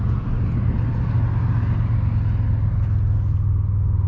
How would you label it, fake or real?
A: real